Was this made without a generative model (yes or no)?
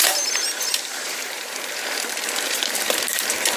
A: no